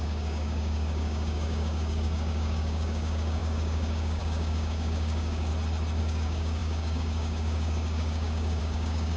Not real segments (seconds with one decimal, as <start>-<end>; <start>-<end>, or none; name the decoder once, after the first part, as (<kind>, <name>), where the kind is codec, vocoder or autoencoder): 0.0-5.5 (codec, DAC); 6.0-9.2